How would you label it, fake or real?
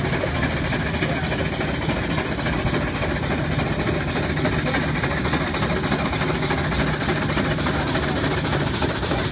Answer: real